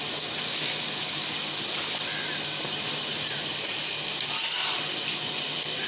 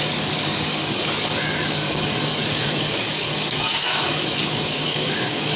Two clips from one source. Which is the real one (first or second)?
first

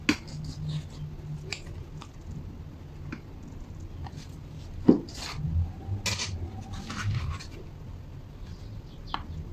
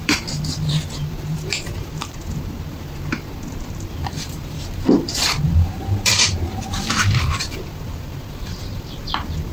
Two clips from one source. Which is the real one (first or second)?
first